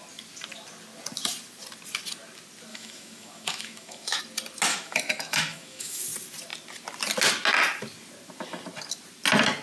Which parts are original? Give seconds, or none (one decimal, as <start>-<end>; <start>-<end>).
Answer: 0.0-2.7; 4.2-4.7; 6.0-9.6